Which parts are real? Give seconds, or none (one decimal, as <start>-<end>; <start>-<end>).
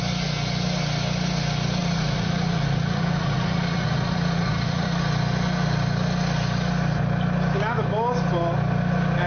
0.0-1.8; 5.0-9.3